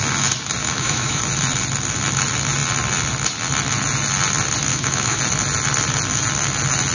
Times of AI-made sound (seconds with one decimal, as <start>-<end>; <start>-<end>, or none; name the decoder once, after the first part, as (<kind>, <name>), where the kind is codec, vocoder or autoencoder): 0.6-1.2 (autoencoder, DAC-VAE); 4.7-5.2